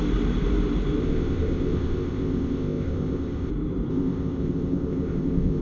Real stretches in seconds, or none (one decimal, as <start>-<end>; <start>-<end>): 0.0-1.0; 3.5-3.9